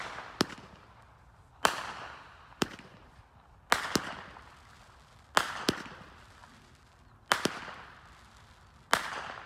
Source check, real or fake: real